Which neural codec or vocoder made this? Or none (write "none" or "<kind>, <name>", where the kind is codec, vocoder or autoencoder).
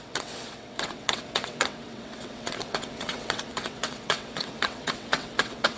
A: vocoder, WaveNeXt